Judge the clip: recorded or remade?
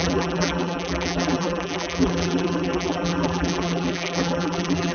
remade